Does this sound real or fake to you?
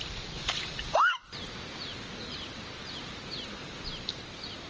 real